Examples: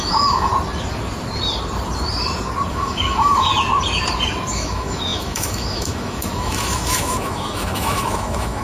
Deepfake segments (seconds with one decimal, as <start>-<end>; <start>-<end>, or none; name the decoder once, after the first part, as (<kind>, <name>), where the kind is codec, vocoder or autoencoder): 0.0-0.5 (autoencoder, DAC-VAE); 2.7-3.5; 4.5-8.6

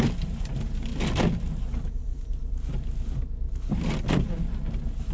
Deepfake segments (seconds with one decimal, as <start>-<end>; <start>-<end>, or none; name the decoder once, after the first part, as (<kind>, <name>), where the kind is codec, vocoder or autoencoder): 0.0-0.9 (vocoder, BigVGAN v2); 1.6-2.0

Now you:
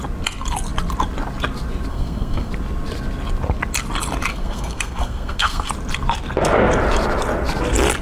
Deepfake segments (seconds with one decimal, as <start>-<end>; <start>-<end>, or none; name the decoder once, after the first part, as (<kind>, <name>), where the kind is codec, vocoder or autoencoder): 1.9-2.5 (codec, SNAC); 4.3-5.7

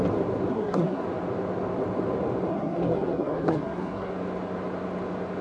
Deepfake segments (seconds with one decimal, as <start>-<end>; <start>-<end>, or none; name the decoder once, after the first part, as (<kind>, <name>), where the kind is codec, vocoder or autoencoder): 0.5-1.0 (codec, SNAC); 2.5-4.1